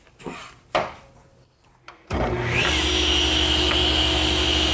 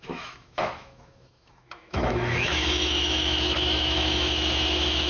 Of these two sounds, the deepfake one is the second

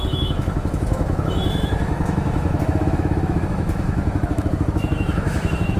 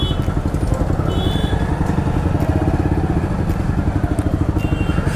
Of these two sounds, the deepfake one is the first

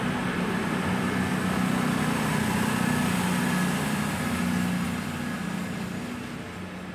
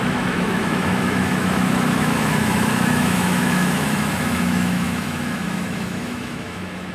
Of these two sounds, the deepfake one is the second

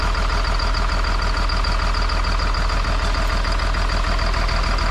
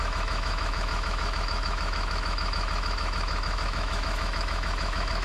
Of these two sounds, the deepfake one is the second